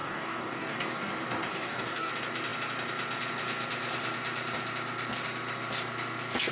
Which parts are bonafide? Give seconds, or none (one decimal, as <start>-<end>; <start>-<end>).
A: 1.1-1.5; 2.1-6.5